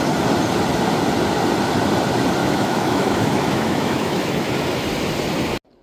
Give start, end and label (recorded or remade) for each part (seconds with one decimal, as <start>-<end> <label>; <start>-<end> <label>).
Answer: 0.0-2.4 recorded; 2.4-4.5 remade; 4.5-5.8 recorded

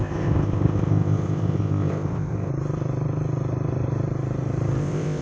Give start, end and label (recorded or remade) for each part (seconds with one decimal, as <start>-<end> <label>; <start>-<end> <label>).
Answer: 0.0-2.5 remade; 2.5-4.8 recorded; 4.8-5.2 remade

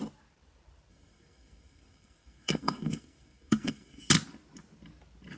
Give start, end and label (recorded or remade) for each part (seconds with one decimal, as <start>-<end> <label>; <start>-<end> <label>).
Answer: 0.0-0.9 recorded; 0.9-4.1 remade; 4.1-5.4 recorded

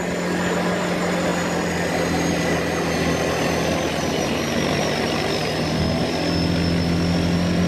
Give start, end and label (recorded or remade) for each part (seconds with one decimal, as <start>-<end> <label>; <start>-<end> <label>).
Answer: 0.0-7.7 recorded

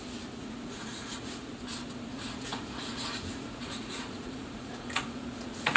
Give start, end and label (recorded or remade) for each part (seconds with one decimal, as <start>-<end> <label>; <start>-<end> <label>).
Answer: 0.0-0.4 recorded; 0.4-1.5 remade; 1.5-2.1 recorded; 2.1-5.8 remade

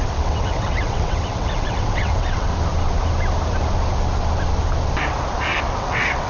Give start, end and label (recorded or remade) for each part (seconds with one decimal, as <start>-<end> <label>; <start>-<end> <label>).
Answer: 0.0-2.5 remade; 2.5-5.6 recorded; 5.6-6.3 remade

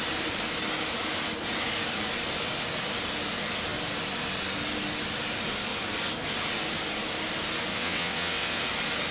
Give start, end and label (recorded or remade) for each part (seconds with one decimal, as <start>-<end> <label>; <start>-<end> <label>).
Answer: 0.0-7.7 recorded; 7.7-8.6 remade; 8.6-9.1 recorded